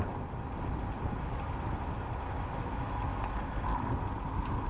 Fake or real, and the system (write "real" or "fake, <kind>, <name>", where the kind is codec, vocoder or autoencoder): real